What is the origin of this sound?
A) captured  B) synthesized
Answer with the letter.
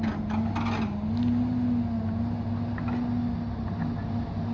A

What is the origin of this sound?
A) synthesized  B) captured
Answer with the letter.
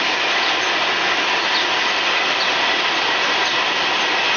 B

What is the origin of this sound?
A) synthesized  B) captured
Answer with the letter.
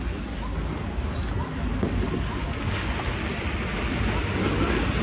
B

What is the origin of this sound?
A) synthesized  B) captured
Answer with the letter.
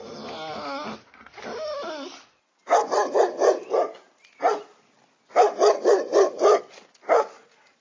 B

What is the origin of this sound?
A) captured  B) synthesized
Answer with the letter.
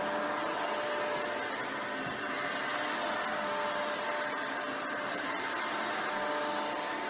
A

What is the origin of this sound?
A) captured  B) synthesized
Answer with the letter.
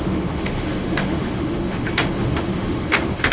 B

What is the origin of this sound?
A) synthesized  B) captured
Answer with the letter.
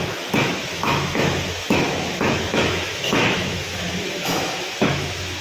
A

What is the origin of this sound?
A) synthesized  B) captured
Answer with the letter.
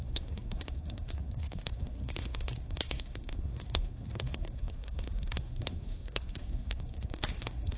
A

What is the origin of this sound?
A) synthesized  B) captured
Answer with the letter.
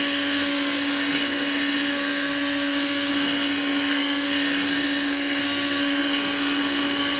A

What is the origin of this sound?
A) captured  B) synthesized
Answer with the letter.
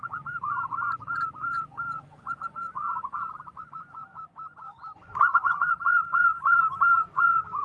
B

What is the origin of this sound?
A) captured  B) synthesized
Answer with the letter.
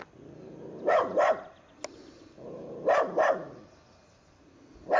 A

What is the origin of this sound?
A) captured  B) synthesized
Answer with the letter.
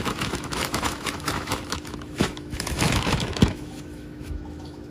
B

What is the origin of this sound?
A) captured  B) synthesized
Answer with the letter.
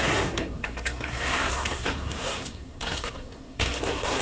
B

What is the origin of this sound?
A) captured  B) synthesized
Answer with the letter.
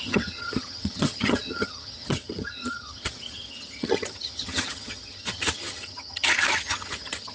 B